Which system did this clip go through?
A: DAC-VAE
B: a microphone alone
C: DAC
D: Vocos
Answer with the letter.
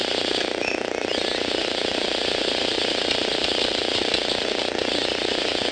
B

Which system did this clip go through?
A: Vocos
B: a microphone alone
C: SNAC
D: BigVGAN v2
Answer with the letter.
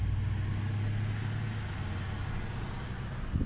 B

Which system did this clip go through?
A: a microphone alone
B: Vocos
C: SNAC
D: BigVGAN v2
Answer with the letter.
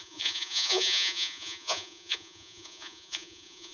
B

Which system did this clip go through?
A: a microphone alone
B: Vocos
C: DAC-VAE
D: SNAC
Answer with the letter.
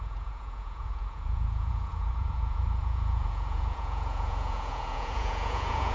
B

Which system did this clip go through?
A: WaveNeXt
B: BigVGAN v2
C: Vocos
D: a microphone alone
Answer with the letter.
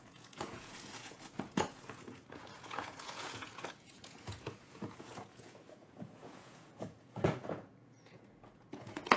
C